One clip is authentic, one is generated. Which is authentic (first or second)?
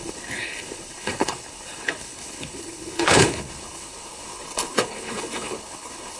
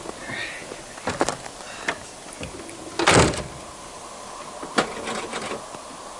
second